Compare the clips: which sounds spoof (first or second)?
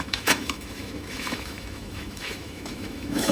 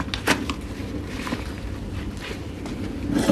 first